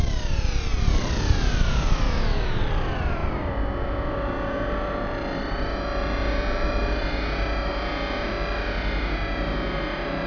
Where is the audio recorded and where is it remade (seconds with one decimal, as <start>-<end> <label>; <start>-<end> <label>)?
0.0-0.7 recorded; 0.7-2.6 remade; 2.6-10.3 recorded